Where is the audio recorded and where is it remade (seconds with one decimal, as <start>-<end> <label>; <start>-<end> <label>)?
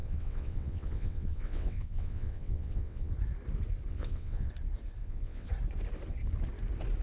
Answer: 0.0-3.1 remade; 3.1-3.9 recorded; 3.9-4.5 remade; 4.5-5.0 recorded; 5.0-5.5 remade; 5.5-7.0 recorded